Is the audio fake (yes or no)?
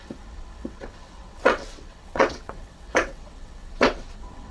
yes